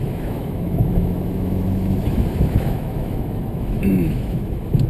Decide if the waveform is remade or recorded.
remade